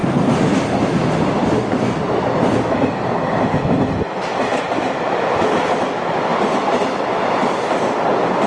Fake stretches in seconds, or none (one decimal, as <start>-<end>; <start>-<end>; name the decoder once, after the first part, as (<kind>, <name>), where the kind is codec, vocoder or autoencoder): 0.0-3.6 (vocoder, BigVGAN v2); 4.5-5.8

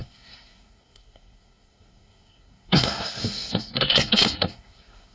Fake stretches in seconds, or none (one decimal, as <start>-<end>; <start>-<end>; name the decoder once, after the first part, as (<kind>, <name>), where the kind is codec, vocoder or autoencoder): 0.0-5.1 (codec, SNAC)

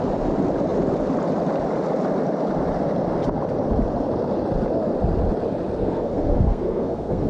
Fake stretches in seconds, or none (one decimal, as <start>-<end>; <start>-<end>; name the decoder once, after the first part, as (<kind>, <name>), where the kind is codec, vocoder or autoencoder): 5.8-7.3 (codec, SNAC)

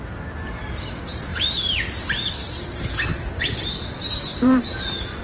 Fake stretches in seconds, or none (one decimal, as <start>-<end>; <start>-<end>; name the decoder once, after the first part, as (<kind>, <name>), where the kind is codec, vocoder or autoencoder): 1.3-2.3 (vocoder, BigVGAN v2); 4.3-5.2

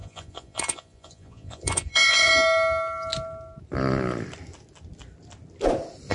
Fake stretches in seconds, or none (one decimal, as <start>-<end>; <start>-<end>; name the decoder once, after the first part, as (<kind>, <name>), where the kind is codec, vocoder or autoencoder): 0.0-2.3 (vocoder, Vocos)

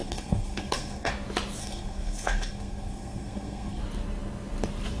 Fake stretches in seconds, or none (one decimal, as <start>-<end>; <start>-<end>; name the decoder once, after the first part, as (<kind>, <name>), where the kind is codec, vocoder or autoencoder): 0.0-1.1 (codec, SNAC); 1.6-3.8

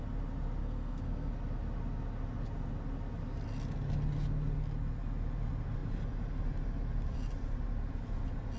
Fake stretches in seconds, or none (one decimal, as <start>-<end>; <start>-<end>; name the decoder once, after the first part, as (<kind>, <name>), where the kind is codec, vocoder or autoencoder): 0.6-1.3 (codec, SNAC)